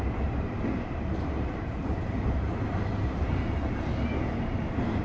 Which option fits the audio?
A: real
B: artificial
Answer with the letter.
B